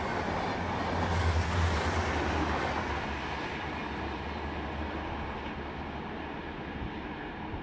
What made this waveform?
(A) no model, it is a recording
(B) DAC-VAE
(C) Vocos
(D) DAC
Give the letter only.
A